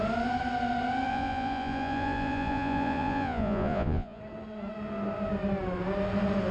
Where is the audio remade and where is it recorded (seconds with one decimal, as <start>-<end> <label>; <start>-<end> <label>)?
0.0-1.1 recorded; 1.1-4.2 remade; 4.2-6.5 recorded